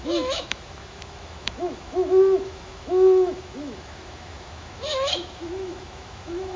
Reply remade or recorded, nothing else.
remade